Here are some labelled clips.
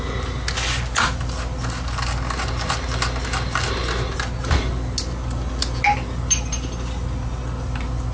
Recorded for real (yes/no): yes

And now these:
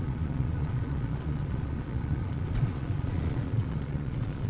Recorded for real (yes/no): no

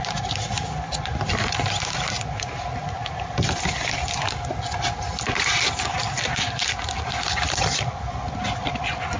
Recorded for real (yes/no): yes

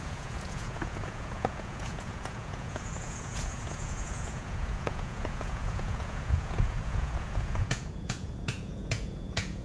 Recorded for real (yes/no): no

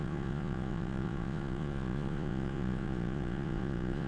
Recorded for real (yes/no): no